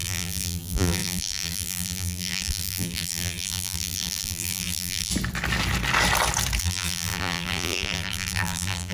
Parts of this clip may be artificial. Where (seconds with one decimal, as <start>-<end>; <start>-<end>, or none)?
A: 0.0-5.1; 6.6-8.9